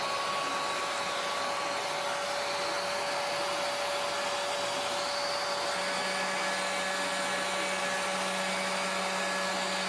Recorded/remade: recorded